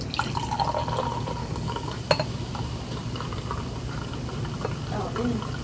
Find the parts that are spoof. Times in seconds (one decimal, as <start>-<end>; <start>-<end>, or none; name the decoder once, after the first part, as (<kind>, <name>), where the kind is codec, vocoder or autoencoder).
1.4-2.0 (codec, DAC)